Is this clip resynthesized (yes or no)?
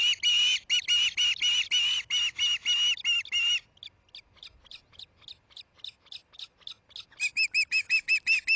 no